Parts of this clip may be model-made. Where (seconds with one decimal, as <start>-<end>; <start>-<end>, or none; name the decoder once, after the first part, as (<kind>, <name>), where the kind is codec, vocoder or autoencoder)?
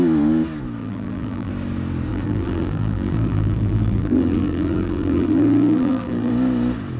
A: 0.8-1.5 (vocoder, BigVGAN v2); 2.1-6.3